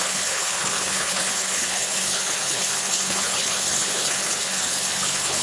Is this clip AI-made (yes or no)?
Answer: yes